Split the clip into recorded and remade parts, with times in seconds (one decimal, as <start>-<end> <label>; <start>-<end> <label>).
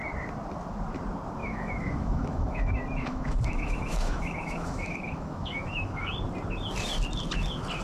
0.0-1.4 recorded; 1.4-6.1 remade; 6.1-7.8 recorded